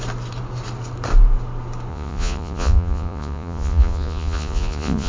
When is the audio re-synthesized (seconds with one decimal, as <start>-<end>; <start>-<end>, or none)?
1.9-5.1